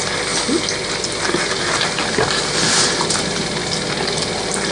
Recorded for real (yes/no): yes